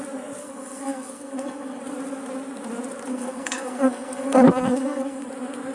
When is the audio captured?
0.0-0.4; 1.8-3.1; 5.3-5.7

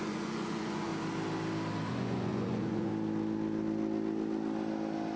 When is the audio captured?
0.9-1.9; 2.9-5.2